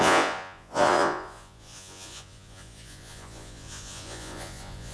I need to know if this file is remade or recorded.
remade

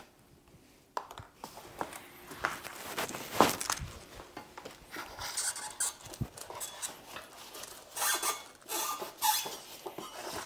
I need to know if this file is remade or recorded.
recorded